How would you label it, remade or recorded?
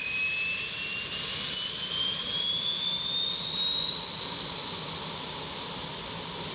recorded